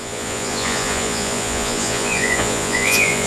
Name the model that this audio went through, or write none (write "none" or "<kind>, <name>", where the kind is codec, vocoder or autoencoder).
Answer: vocoder, Vocos